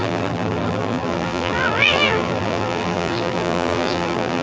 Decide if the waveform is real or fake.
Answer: fake